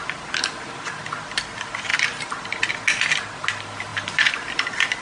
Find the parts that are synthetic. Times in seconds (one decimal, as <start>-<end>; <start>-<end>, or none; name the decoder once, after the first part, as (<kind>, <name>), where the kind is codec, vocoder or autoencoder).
1.9-2.7 (vocoder, BigVGAN v2); 3.9-4.5